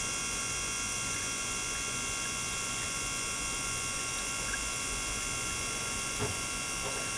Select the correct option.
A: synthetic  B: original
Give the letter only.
A